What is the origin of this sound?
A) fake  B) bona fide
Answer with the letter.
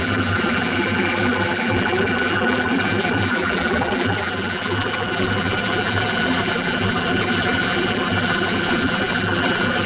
A